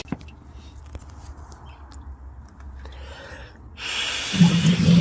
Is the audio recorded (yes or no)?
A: yes